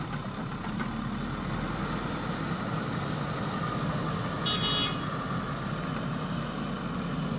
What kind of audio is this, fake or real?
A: real